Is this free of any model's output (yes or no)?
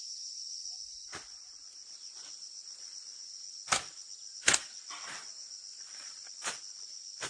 yes